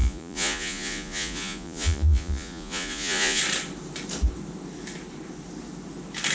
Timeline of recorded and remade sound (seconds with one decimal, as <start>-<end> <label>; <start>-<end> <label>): 0.0-3.4 remade; 3.4-6.3 recorded